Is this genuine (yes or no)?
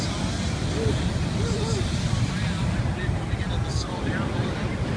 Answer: yes